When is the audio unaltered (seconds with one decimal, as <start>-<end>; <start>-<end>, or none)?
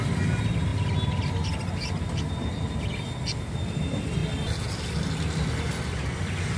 0.0-6.6